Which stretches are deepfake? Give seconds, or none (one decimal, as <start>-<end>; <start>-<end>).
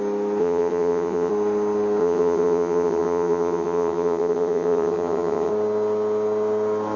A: 0.4-1.3; 2.0-5.5